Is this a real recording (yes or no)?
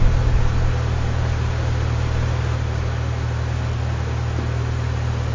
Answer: yes